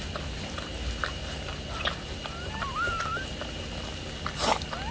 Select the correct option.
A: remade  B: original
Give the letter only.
B